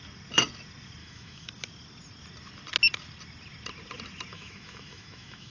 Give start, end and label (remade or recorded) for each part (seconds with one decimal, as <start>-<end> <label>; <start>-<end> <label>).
0.0-1.0 recorded; 1.0-1.5 remade; 1.5-4.3 recorded; 4.3-5.5 remade